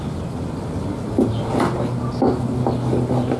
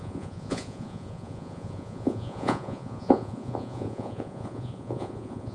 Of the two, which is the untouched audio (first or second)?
first